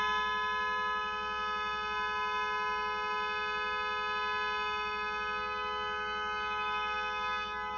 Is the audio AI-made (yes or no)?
no